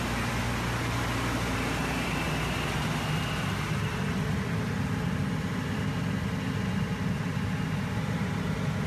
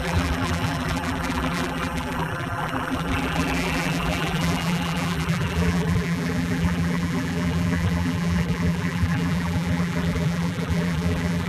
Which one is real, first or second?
first